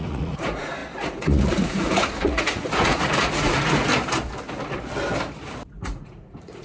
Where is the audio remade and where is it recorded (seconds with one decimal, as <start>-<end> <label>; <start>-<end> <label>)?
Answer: 0.0-3.9 remade; 3.9-5.7 recorded; 5.7-6.6 remade